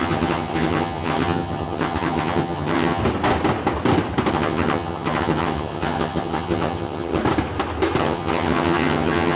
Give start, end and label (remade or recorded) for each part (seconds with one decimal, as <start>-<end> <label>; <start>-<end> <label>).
0.0-3.0 remade; 3.0-4.3 recorded; 4.3-7.2 remade; 7.2-8.0 recorded; 8.0-9.4 remade

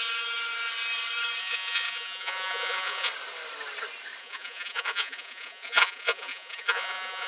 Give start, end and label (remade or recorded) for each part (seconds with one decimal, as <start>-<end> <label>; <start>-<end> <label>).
0.0-1.4 recorded; 1.4-3.1 remade; 3.1-4.2 recorded; 4.2-7.3 remade